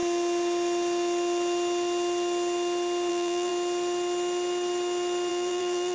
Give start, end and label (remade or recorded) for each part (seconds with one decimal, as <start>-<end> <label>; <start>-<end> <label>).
0.0-3.1 recorded; 3.1-3.5 remade; 3.5-5.3 recorded; 5.3-5.9 remade